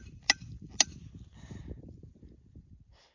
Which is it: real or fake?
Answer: fake